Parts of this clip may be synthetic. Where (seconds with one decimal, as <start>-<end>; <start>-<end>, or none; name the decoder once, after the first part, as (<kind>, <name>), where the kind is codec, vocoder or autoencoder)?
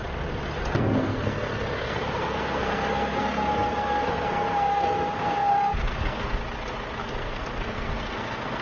0.7-6.4 (codec, SNAC); 7.0-8.6